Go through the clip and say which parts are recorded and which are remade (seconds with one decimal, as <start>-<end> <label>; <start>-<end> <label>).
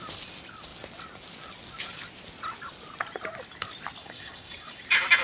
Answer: 0.0-4.0 recorded; 4.0-4.8 remade; 4.8-5.2 recorded